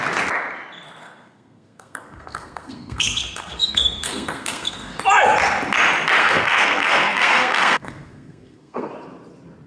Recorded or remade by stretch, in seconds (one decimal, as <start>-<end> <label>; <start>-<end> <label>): 0.0-1.0 recorded; 1.0-5.0 remade; 5.0-6.2 recorded; 6.2-8.9 remade; 8.9-9.7 recorded

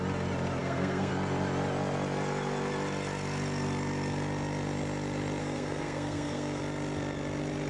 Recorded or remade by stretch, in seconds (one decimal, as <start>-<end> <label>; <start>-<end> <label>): 0.0-0.6 recorded; 0.6-1.1 remade; 1.1-5.4 recorded; 5.4-6.6 remade; 6.6-7.7 recorded

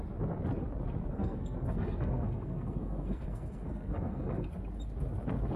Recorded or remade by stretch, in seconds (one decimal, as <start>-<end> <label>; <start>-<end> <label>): 0.0-1.1 recorded; 1.1-4.5 remade; 4.5-5.6 recorded

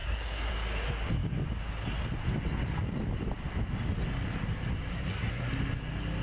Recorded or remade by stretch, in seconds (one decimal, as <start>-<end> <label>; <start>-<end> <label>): 0.0-0.5 remade; 0.5-4.9 recorded; 4.9-5.5 remade; 5.5-6.2 recorded

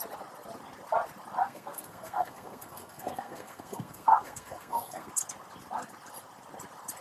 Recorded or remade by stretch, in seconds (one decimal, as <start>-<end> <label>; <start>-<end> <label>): 0.0-1.4 recorded; 1.4-5.1 remade; 5.1-7.0 recorded

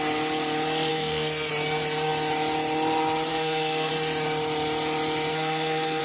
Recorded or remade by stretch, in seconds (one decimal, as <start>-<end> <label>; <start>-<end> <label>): 0.0-0.9 recorded; 0.9-1.5 remade; 1.5-3.3 recorded; 3.3-3.9 remade; 3.9-5.3 recorded; 5.3-6.0 remade

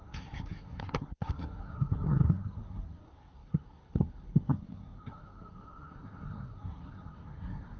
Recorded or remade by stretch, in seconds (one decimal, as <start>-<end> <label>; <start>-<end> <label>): 0.0-7.8 remade

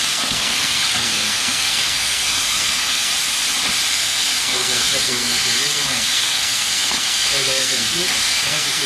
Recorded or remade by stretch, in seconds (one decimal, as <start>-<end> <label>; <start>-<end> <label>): 0.0-3.1 remade; 3.1-3.9 recorded; 3.9-8.9 remade